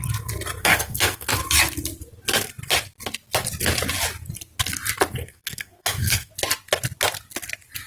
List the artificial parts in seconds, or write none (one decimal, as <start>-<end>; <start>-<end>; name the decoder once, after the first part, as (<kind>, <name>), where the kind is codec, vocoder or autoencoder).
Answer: 0.6-1.3 (codec, SNAC); 5.2-6.3

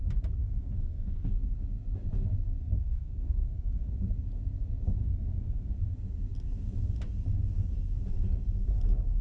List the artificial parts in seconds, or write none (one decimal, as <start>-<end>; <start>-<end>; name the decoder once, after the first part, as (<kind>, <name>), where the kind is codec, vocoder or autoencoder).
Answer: 0.4-1.3 (codec, SNAC); 2.6-3.9; 5.0-5.7

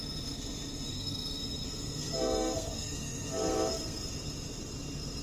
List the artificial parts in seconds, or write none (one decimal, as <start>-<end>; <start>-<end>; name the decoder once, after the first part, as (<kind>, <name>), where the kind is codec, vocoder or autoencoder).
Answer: 0.9-4.0 (codec, SNAC)

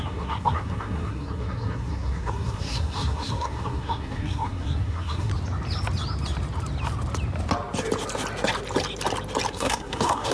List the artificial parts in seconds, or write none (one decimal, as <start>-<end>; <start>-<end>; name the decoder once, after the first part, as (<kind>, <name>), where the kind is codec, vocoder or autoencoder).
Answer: 0.0-5.3 (codec, SNAC); 9.5-10.3

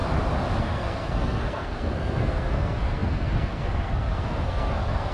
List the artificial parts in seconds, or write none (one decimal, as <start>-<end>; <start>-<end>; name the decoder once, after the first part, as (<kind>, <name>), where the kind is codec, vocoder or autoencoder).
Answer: 0.6-5.1 (codec, SNAC)

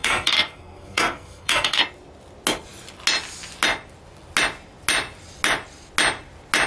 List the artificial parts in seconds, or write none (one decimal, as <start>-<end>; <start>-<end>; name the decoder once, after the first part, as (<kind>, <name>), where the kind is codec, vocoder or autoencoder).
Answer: 0.0-1.8 (codec, SNAC)

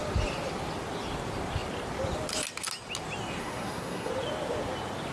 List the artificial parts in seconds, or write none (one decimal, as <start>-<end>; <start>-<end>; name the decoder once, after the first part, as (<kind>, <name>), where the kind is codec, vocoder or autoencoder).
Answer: 3.4-4.1 (codec, SNAC)